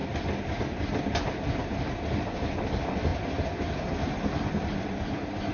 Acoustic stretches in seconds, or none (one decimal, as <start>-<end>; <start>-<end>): 0.0-0.6; 3.1-4.5